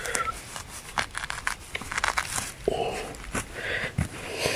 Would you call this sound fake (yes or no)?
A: no